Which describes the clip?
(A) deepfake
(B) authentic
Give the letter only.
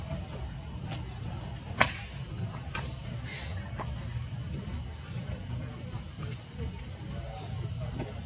B